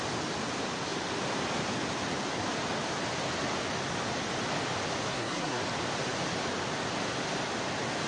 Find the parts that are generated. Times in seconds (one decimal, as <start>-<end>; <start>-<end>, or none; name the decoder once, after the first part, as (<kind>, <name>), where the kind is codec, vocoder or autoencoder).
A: 5.1-5.6 (codec, SNAC)